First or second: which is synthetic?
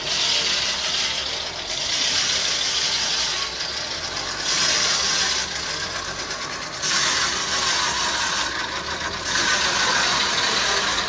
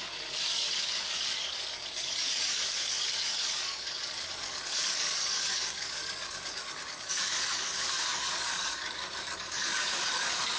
second